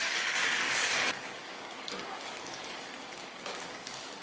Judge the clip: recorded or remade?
remade